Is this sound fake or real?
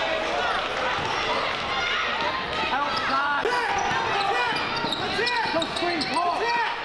real